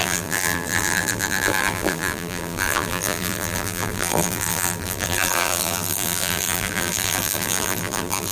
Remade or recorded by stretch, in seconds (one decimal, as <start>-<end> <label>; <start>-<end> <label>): 0.0-8.3 remade